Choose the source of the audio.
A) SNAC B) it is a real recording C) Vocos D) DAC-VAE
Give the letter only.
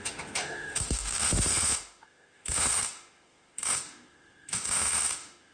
D